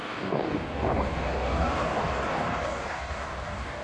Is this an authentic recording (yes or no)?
no